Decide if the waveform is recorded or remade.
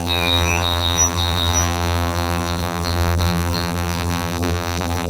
remade